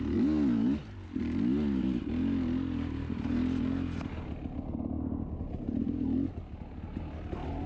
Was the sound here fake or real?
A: real